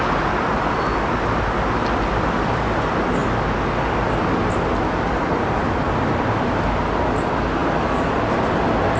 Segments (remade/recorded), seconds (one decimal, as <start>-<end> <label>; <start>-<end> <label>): 0.0-9.0 recorded